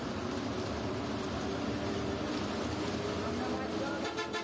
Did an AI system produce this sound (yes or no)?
no